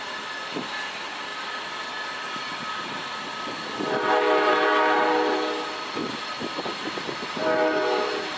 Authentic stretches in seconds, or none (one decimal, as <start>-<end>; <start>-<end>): 0.0-8.4